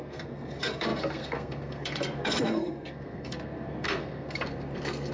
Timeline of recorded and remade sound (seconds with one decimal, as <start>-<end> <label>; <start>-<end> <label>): 0.0-5.1 remade